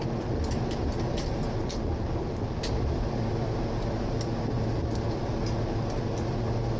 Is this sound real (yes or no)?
yes